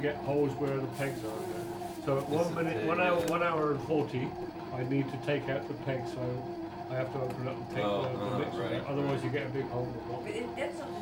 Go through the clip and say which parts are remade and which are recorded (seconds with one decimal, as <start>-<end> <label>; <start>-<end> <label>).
0.0-2.4 recorded; 2.4-5.0 remade; 5.0-11.0 recorded